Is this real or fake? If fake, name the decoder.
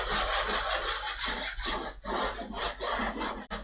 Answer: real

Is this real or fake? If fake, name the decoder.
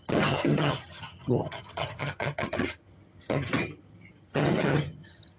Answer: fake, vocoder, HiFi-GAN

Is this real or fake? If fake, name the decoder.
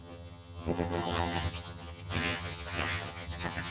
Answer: fake, vocoder, HiFi-GAN